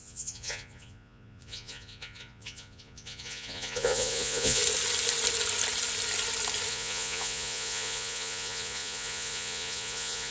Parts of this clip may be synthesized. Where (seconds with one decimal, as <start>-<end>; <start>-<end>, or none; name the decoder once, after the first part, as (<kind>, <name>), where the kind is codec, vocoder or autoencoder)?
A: 0.0-4.6 (vocoder, Vocos); 6.7-10.3